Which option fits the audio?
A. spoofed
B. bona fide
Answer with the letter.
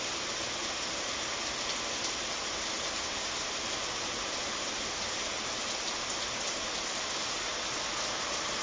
B